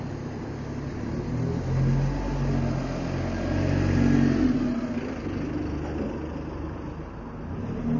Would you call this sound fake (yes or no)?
no